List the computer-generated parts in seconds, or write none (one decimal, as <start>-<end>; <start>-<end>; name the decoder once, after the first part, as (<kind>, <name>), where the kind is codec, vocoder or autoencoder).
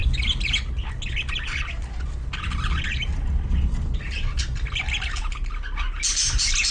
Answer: none